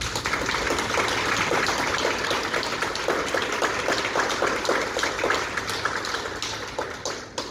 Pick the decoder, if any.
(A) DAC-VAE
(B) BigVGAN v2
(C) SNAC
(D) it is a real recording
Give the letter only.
D